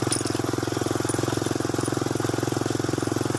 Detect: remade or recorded recorded